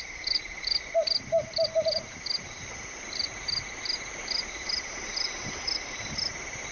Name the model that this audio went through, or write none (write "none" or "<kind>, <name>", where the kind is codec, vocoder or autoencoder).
none